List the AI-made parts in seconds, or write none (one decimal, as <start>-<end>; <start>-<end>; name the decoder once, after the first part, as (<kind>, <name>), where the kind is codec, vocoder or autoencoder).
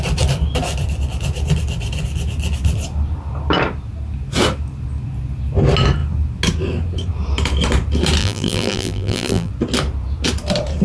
8.2-9.5 (vocoder, BigVGAN v2)